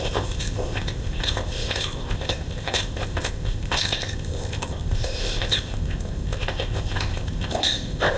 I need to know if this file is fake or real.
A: fake